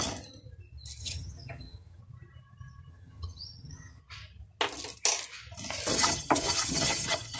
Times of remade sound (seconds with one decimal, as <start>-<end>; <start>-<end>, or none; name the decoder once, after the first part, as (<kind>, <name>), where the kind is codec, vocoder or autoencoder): 1.0-2.0 (vocoder, HiFi-GAN); 2.9-4.0; 5.9-7.4